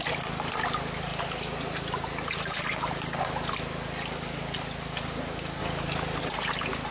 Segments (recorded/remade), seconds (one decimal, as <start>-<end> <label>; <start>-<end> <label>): 0.0-6.9 recorded